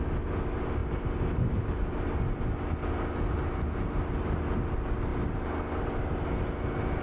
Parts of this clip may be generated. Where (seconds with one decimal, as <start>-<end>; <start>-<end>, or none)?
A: none